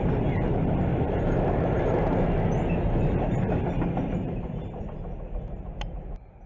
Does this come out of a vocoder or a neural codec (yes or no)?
no